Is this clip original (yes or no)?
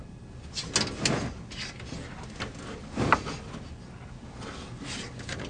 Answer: yes